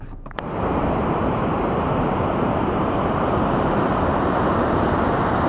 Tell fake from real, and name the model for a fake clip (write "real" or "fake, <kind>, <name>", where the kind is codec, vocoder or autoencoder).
fake, vocoder, BigVGAN v2